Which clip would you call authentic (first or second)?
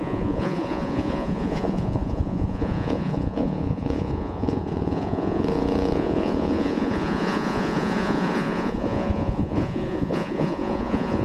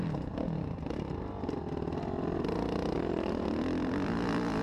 second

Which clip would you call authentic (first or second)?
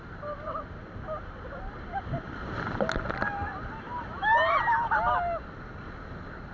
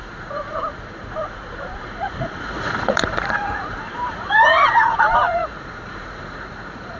first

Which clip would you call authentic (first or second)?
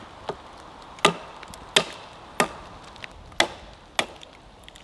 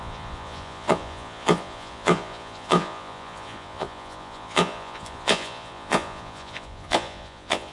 first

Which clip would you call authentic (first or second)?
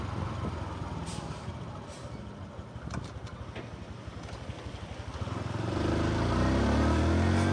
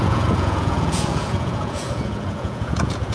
first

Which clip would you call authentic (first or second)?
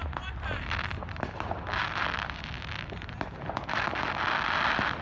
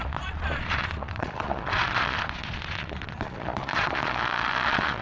first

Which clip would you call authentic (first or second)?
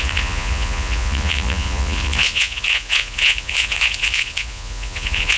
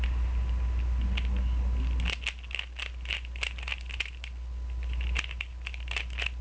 second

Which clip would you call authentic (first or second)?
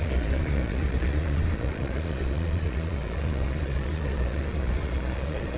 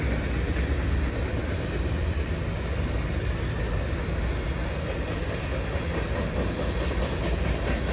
second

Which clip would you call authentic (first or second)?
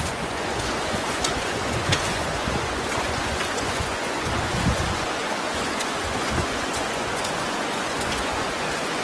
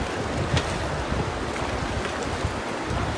second